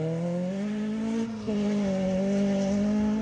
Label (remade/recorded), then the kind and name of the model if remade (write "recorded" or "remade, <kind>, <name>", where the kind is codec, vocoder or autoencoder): recorded